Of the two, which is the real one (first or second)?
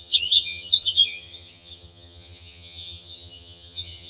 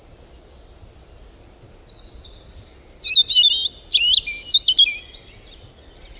second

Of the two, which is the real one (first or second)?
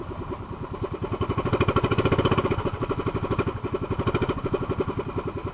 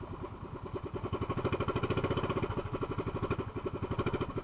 second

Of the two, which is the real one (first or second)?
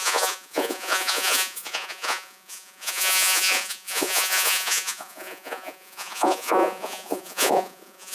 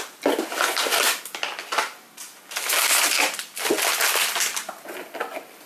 second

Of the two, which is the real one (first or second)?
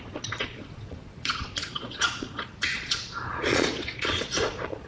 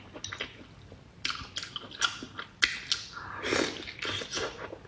second